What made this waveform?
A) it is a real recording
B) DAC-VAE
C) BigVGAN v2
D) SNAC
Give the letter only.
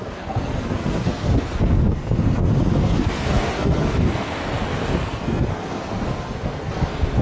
D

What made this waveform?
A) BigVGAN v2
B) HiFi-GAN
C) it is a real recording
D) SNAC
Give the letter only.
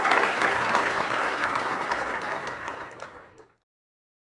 D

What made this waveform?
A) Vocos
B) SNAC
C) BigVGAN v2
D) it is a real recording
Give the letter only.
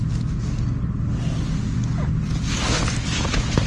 D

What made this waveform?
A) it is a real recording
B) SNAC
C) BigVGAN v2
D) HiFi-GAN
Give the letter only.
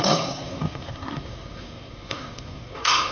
B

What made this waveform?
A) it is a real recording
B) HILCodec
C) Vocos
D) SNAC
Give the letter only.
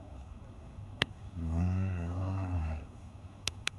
D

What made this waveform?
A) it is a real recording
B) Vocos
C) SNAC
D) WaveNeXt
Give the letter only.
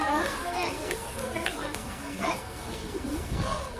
C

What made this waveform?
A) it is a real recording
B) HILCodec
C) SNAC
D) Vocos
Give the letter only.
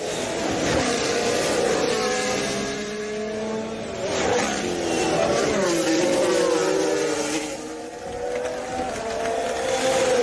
A